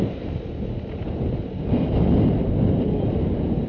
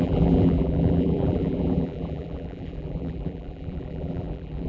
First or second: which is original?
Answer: first